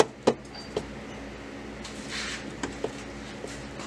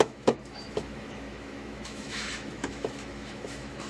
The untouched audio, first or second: first